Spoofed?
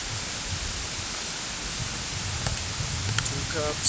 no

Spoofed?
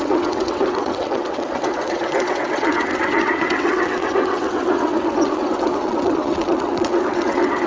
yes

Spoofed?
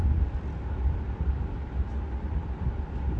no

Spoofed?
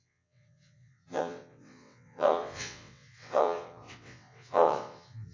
yes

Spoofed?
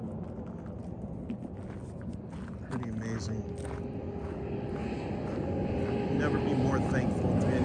no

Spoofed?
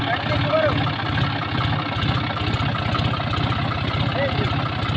no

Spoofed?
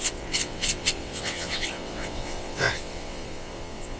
yes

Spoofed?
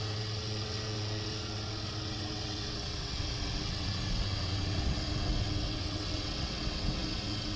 yes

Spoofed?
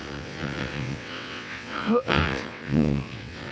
yes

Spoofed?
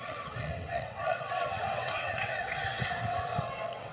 yes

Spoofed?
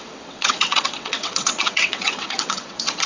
yes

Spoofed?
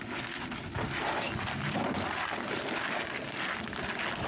no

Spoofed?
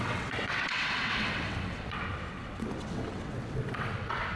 yes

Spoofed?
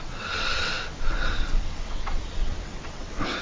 yes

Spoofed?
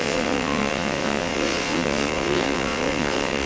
yes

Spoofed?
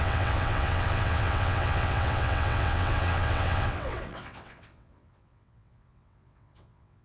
yes